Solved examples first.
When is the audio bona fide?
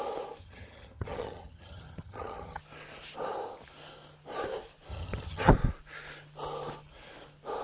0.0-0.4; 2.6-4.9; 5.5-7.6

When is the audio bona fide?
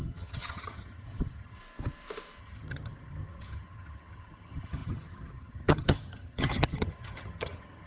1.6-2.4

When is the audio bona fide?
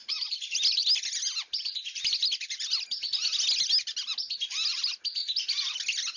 0.0-6.2